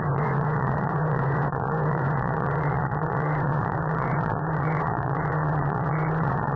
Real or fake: fake